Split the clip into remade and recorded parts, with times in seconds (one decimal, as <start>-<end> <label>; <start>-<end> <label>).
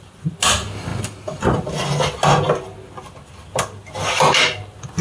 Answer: 0.0-5.0 recorded